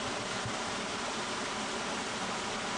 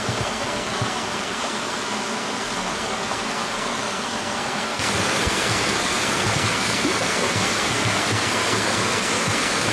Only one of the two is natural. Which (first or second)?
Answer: first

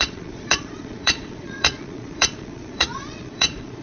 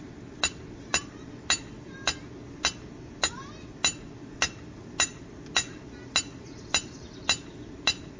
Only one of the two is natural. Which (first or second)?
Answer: second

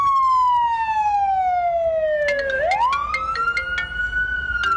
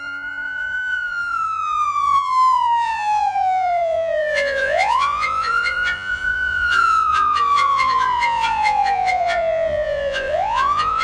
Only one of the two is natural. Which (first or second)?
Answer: first